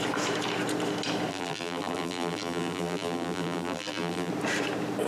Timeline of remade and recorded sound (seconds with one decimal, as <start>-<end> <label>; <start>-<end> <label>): 0.0-1.3 recorded; 1.3-4.3 remade; 4.3-5.1 recorded